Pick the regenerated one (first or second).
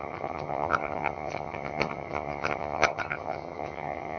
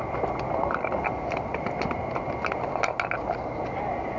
first